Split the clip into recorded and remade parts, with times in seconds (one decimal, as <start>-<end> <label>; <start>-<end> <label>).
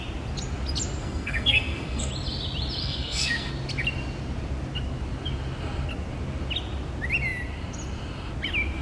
0.0-1.0 recorded; 1.0-2.1 remade; 2.1-2.8 recorded; 2.8-3.5 remade; 3.5-8.8 recorded